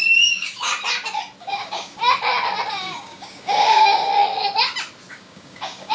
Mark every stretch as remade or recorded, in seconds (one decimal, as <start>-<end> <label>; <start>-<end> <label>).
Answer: 0.0-0.7 remade; 0.7-1.4 recorded; 1.4-2.0 remade; 2.0-2.7 recorded; 2.7-4.1 remade; 4.1-5.1 recorded; 5.1-5.9 remade